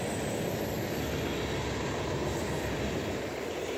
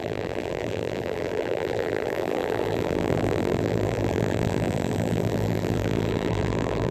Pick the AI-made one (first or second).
second